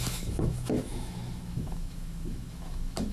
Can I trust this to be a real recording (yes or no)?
no